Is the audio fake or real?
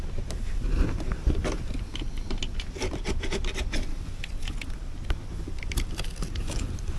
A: real